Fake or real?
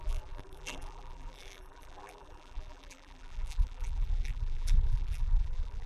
fake